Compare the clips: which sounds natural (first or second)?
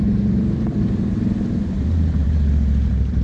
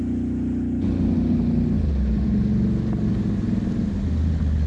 second